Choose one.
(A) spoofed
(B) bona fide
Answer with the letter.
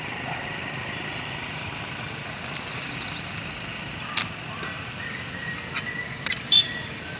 B